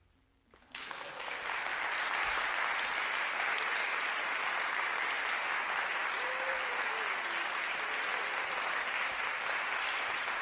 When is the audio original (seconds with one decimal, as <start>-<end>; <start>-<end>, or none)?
0.0-10.4